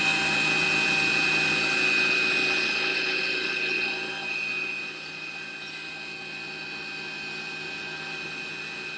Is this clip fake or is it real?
real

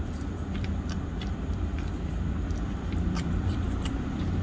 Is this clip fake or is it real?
fake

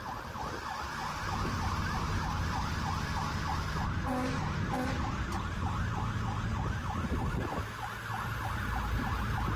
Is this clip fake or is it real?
real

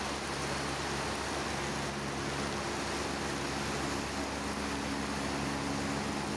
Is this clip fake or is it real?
real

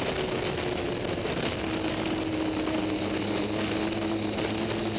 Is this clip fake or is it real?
real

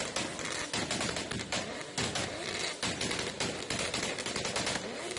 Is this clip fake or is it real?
real